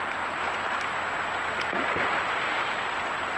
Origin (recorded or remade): recorded